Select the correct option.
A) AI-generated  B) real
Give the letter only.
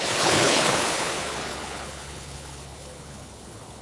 A